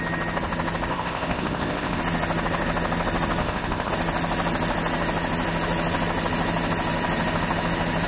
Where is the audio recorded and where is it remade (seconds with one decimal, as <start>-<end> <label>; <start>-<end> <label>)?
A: 0.0-0.9 recorded; 0.9-2.0 remade; 2.0-3.4 recorded; 3.4-3.9 remade; 3.9-8.1 recorded